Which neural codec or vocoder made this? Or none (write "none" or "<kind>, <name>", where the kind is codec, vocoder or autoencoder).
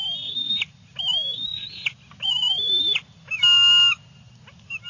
none